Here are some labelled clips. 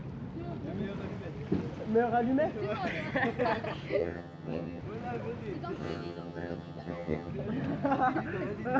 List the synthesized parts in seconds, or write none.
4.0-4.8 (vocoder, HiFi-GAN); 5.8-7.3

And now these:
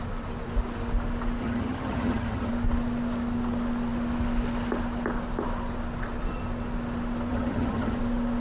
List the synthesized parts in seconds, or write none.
1.4-2.5 (vocoder, HiFi-GAN); 7.3-8.0

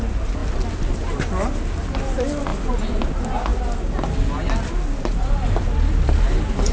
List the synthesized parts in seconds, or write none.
none

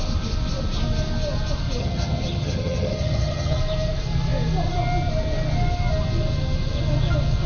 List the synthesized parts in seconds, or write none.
1.8-3.6 (vocoder, HiFi-GAN)

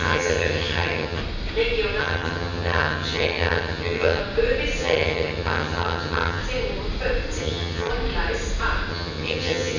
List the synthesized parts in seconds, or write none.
0.0-1.2 (vocoder, HiFi-GAN); 2.0-4.2; 4.8-6.4; 7.4-7.9; 8.9-9.8

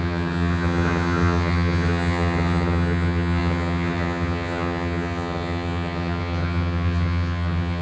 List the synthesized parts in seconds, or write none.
0.0-7.8 (vocoder, HiFi-GAN)

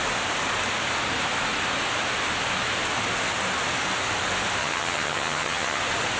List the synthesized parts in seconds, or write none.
4.6-5.8 (vocoder, HiFi-GAN)

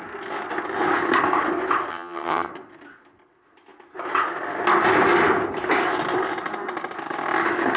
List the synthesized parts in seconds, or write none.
1.9-2.5 (vocoder, HiFi-GAN)